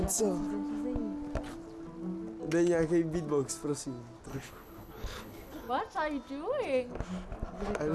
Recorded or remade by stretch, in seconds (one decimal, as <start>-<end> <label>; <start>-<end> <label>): 0.0-4.3 recorded; 4.3-5.7 remade; 5.7-7.9 recorded